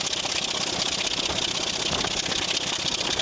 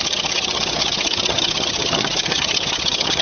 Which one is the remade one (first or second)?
second